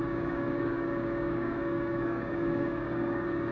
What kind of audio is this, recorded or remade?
remade